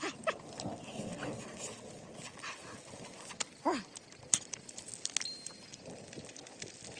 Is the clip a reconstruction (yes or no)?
no